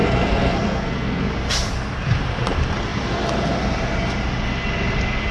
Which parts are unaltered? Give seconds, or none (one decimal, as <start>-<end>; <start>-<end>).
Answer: 1.2-5.3